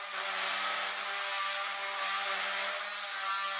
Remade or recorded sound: recorded